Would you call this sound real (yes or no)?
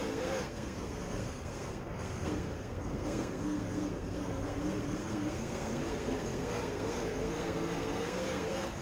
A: no